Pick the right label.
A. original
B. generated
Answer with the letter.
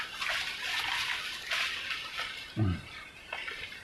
A